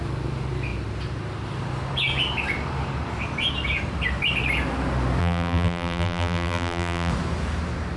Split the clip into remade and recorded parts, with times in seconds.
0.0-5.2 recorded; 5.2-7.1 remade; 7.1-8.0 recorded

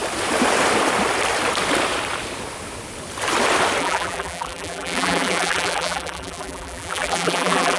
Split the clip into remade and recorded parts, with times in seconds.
0.0-3.8 recorded; 3.8-7.8 remade